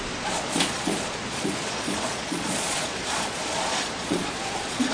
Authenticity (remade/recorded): remade